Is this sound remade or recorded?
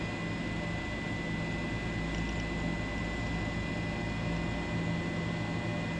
recorded